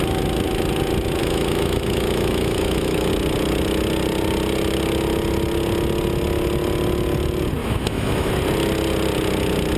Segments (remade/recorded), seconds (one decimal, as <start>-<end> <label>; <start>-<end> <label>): 0.0-1.2 recorded; 1.2-3.1 remade; 3.1-7.6 recorded; 7.6-8.3 remade; 8.3-9.8 recorded